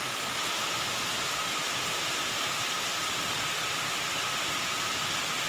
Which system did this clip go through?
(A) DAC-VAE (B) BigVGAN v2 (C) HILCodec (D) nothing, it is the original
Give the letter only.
D